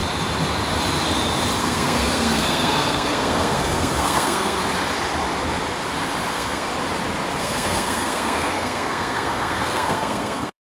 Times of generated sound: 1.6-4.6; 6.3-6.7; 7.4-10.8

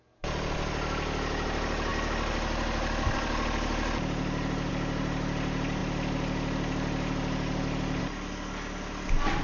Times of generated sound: none

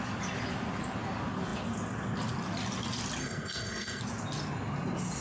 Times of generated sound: 3.2-4.0